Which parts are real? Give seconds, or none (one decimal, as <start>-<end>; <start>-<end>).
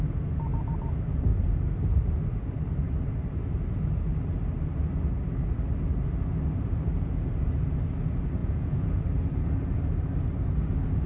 0.0-8.4; 9.0-11.1